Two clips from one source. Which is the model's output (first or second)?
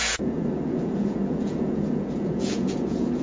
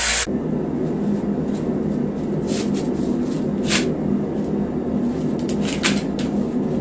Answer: first